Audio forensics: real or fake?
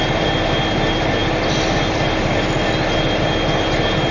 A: real